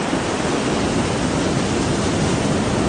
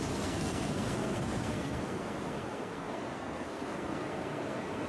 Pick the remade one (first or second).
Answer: second